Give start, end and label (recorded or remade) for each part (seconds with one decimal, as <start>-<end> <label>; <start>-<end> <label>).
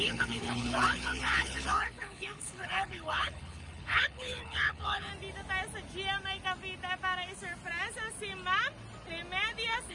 0.0-5.1 remade; 5.1-9.9 recorded